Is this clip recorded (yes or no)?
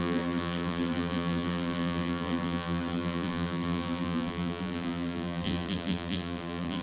no